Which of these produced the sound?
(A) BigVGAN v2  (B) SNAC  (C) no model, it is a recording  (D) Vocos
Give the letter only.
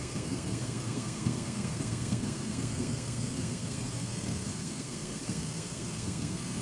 B